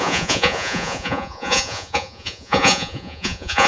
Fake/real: fake